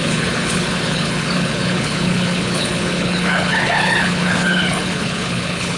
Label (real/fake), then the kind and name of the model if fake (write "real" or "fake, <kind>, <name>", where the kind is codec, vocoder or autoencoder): fake, codec, HILCodec